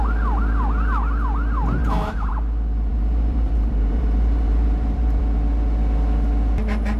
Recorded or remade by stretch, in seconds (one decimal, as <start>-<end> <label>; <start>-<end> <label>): 0.0-1.8 recorded; 1.8-2.3 remade; 2.3-2.9 recorded; 2.9-5.2 remade; 5.2-7.0 recorded